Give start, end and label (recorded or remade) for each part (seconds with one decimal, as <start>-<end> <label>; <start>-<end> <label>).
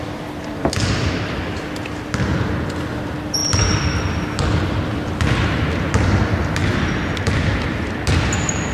0.0-8.7 recorded